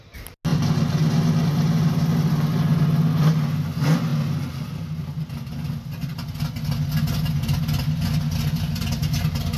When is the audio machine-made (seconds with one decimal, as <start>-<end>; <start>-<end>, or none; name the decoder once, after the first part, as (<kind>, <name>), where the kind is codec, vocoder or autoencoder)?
none